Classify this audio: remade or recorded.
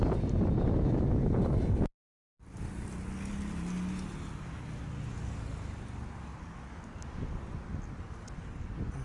recorded